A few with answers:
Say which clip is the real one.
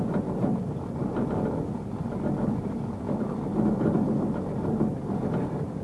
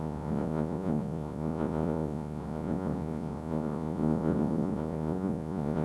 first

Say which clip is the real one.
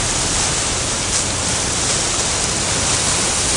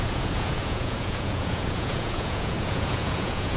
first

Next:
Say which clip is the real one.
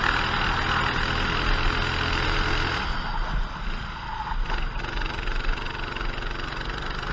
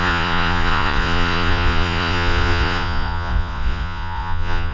first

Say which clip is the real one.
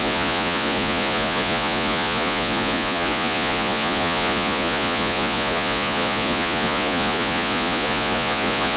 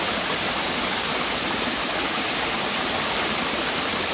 second